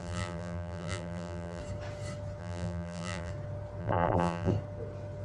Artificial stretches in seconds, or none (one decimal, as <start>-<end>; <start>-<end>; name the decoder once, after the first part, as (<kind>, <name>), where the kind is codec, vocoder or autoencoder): 0.0-1.6 (vocoder, BigVGAN v2); 2.4-3.3; 3.8-4.5